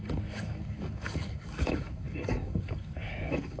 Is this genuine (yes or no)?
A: no